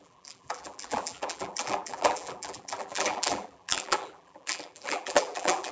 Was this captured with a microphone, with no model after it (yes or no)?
no